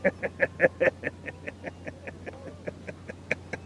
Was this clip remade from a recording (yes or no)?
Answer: no